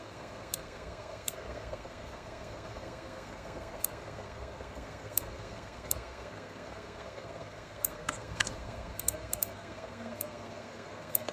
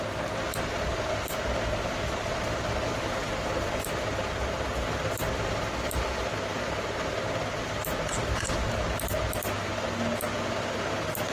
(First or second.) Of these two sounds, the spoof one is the first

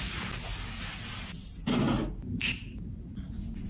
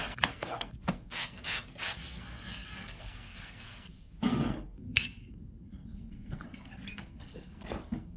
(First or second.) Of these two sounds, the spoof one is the second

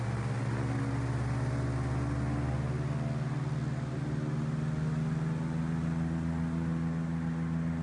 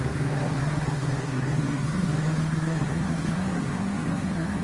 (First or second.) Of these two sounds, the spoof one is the second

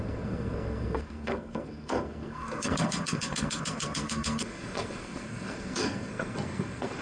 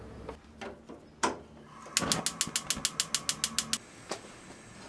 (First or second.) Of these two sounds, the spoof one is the first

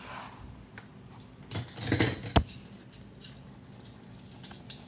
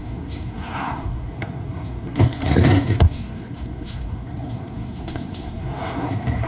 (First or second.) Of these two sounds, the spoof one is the second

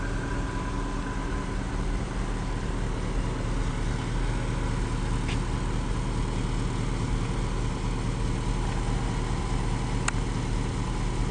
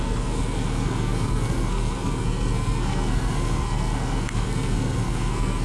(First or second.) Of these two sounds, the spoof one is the second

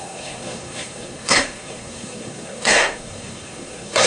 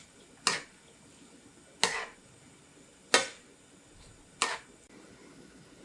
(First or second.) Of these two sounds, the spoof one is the first